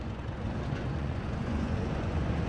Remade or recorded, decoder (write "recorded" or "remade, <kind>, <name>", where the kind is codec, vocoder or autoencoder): remade, vocoder, Vocos